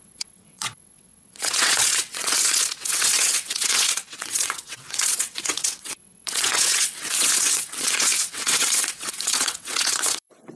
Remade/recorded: remade